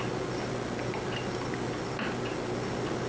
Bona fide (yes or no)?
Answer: yes